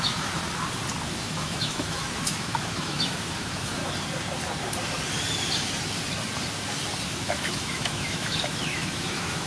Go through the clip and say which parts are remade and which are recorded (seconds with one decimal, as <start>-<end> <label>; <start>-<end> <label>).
0.0-0.4 remade; 0.4-1.1 recorded; 1.1-3.8 remade; 3.8-7.2 recorded; 7.2-9.5 remade